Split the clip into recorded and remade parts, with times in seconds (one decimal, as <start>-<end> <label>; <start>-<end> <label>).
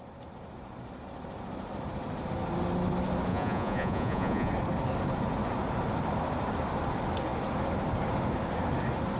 0.0-3.3 recorded; 3.3-4.5 remade; 4.5-9.2 recorded